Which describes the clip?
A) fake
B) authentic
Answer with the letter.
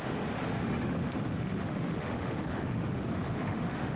A